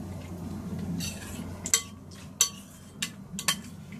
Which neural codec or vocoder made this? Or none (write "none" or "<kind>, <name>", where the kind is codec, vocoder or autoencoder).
none